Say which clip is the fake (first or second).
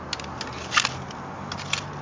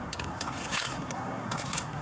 second